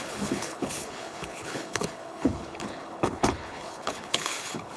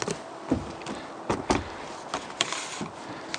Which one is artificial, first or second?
first